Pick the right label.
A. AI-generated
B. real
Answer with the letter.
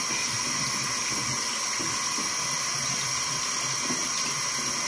B